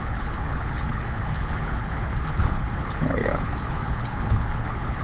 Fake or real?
fake